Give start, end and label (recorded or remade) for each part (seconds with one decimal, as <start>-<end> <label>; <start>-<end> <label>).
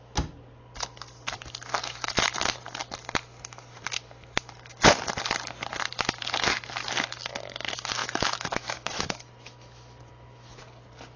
0.0-8.0 recorded; 8.0-10.6 remade; 10.6-11.2 recorded